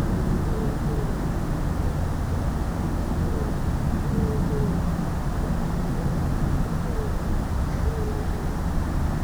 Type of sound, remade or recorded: recorded